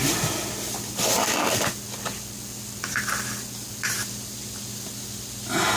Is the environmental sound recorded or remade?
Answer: recorded